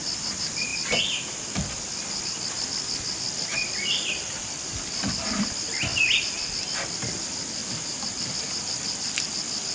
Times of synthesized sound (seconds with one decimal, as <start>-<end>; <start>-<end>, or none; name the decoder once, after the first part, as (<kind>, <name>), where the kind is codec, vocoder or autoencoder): 3.5-5.5 (vocoder, BigVGAN v2); 5.9-6.5; 7.6-9.7